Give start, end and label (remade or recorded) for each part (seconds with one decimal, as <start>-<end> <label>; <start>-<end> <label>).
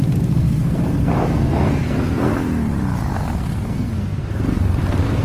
0.0-2.3 remade; 2.3-3.1 recorded; 3.1-5.2 remade